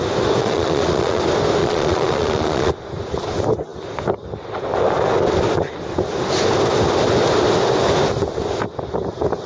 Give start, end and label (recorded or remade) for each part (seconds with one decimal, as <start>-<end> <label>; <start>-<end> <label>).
0.0-0.4 recorded; 0.4-1.2 remade; 1.2-1.6 recorded; 1.6-2.7 remade; 2.7-9.5 recorded